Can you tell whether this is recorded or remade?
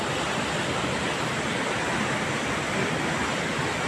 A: recorded